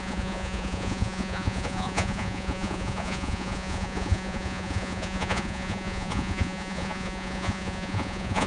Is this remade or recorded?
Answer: remade